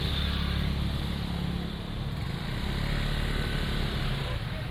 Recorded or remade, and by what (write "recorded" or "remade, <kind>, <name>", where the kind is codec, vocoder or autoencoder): recorded